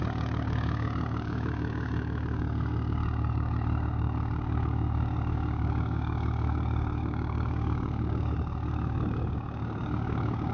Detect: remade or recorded remade